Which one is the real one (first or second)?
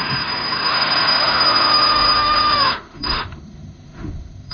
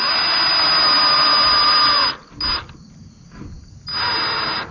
second